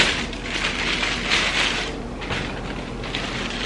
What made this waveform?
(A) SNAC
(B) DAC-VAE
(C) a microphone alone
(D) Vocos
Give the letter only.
C